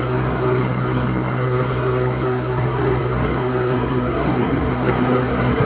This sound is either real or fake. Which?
fake